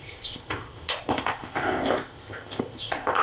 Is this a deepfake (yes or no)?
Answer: yes